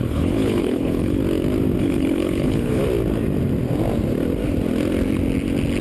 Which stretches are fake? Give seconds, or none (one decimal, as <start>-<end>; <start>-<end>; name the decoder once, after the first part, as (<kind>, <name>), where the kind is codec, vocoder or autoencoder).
0.0-1.2 (codec, HILCodec); 1.8-2.8